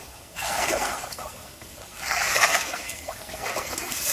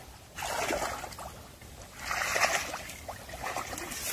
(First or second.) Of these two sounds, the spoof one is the first